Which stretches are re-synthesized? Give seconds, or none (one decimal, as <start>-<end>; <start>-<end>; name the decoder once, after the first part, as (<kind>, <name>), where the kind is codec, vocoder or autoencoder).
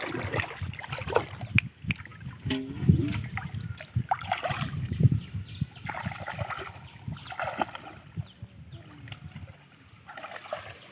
none